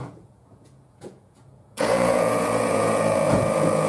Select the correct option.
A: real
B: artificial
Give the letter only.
B